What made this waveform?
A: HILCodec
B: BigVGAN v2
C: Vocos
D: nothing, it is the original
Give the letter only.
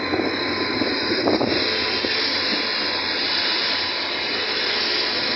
D